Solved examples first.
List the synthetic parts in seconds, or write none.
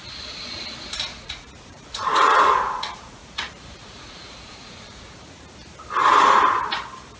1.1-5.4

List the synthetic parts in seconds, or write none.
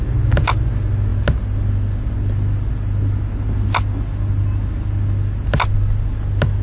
none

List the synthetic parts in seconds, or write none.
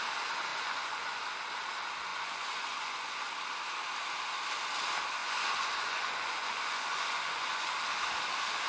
0.5-1.2; 2.1-3.3; 5.2-7.7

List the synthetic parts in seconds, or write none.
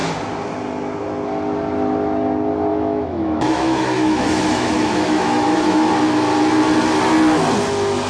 2.7-5.9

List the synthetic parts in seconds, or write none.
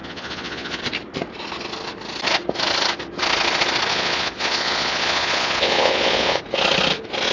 0.0-0.8; 3.9-6.4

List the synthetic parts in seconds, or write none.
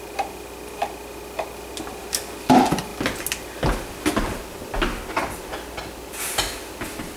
none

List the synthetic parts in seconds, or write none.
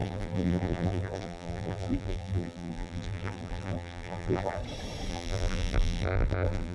0.0-4.6; 5.1-6.7